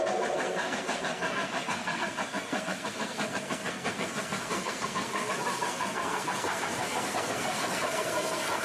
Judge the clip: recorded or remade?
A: remade